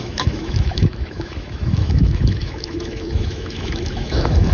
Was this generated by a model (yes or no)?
yes